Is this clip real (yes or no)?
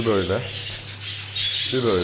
yes